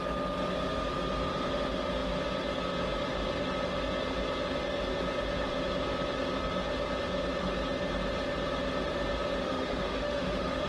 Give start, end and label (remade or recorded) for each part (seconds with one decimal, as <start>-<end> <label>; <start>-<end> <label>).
0.0-9.4 recorded; 9.4-10.7 remade